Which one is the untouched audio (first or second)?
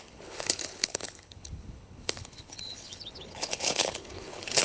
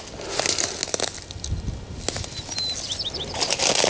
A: second